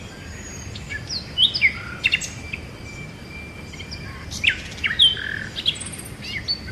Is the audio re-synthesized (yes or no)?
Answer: no